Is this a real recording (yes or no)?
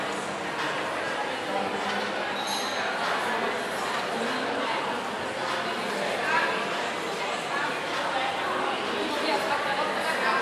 yes